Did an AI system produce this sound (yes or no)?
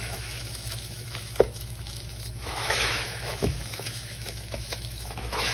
yes